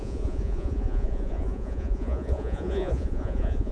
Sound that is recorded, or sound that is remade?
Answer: remade